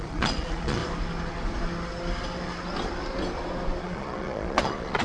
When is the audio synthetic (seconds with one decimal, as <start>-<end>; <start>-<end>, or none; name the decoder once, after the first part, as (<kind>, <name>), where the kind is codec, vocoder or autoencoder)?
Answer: 0.0-0.8 (vocoder, Vocos); 3.8-5.0

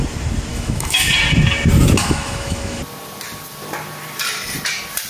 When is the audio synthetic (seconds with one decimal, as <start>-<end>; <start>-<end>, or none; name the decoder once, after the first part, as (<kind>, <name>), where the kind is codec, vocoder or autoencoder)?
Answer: 0.5-1.1 (autoencoder, DAC-VAE); 2.0-2.8